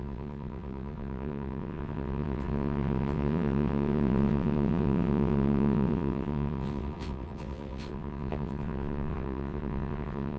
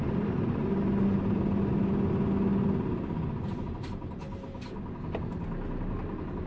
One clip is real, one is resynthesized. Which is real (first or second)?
second